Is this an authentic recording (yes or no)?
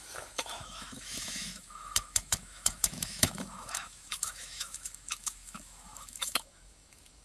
no